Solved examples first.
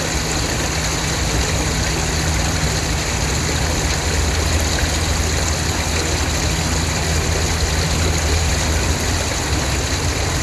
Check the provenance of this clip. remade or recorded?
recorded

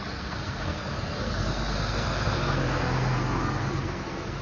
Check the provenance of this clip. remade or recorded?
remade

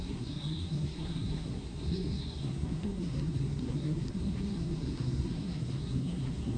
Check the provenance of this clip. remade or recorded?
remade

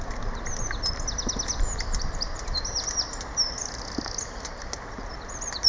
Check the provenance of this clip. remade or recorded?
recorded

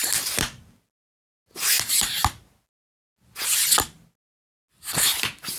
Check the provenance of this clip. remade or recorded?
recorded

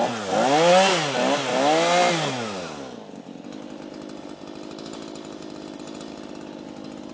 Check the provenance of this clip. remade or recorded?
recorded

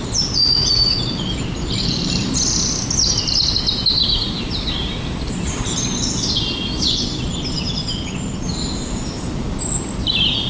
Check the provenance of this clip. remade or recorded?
recorded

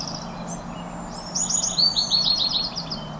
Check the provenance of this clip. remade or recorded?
recorded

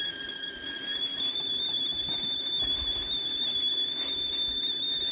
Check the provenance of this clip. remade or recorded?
recorded